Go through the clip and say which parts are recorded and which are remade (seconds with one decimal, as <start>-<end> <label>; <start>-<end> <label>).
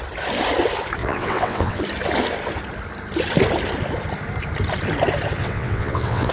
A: 0.0-1.0 recorded; 1.0-1.8 remade; 1.8-5.4 recorded; 5.4-6.3 remade